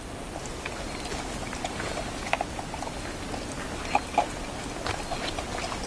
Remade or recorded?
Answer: recorded